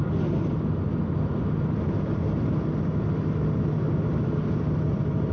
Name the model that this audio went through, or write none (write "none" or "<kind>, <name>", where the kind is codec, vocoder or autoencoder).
none